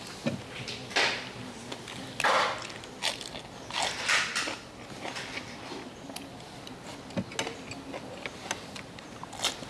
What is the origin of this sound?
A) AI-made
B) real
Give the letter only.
B